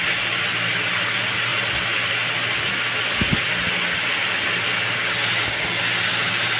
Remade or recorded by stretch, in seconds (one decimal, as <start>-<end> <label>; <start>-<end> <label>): 0.0-6.6 recorded